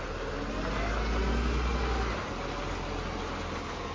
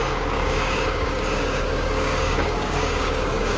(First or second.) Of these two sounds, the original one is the first